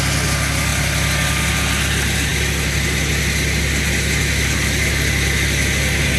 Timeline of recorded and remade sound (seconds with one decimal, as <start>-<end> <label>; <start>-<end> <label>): 0.0-6.2 recorded